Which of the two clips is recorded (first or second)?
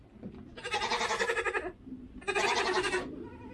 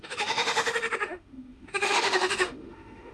first